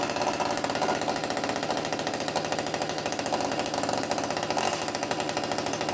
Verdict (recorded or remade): recorded